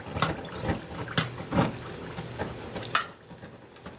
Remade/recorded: recorded